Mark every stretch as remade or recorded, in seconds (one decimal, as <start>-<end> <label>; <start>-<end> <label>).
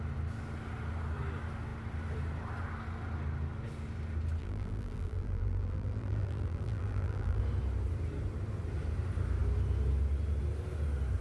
0.0-4.4 recorded; 4.4-7.4 remade; 7.4-11.2 recorded